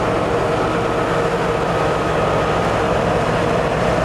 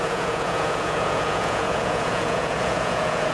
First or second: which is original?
first